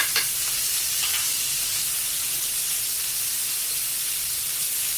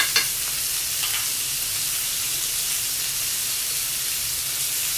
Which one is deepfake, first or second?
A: first